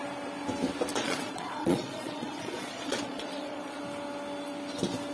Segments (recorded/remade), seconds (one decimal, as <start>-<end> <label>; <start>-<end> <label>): 0.0-0.9 recorded; 0.9-3.8 remade; 3.8-5.1 recorded